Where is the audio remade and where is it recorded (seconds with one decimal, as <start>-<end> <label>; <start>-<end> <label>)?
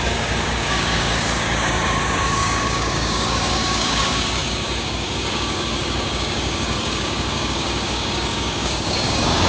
0.0-9.5 remade